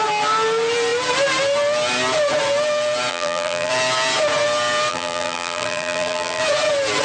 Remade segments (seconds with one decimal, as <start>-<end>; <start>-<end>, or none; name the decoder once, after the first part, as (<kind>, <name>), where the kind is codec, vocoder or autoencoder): 3.1-3.7 (vocoder, BigVGAN v2); 4.9-6.4